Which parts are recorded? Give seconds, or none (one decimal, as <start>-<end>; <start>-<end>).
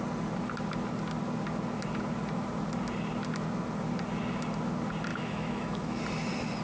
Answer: 0.0-5.1; 6.0-6.6